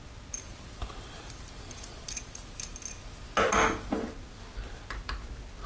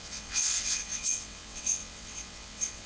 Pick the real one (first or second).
first